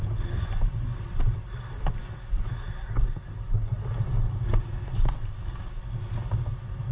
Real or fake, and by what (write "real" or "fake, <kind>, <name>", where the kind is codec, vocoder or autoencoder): real